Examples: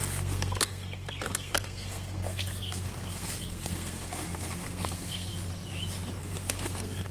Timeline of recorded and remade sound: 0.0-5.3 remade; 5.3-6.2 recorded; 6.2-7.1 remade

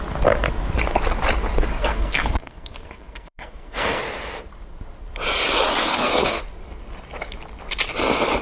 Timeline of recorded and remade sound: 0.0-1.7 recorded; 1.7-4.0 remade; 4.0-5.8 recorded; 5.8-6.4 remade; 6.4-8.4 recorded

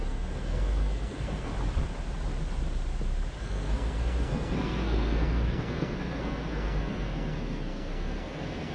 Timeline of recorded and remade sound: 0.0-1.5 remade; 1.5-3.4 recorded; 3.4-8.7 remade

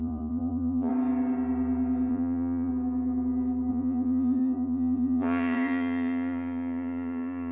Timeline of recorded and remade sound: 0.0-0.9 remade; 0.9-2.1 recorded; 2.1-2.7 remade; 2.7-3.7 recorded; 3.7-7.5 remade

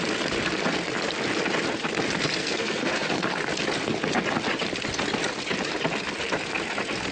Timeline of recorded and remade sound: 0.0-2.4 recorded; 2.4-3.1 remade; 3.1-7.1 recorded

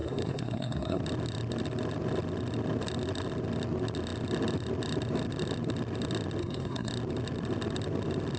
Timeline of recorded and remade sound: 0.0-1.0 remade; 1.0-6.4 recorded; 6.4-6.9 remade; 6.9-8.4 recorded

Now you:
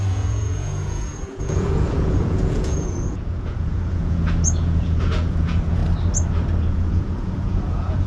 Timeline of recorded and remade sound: 0.0-5.8 remade; 5.8-6.7 recorded; 6.7-8.1 remade